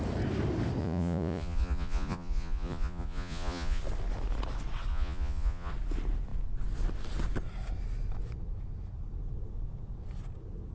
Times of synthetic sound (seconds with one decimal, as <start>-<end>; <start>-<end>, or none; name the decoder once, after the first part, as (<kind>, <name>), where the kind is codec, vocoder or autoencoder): 0.8-3.8 (vocoder, Vocos); 4.9-5.7